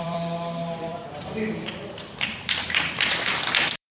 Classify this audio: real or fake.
fake